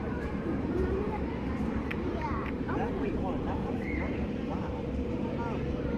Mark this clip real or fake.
fake